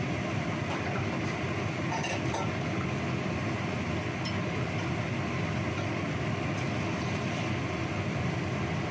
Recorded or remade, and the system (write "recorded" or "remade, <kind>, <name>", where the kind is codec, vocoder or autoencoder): recorded